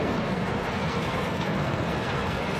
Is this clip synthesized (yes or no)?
yes